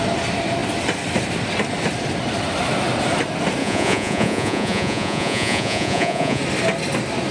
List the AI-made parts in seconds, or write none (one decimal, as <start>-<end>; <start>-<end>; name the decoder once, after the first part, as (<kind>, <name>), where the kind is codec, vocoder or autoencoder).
3.6-6.4 (vocoder, Vocos)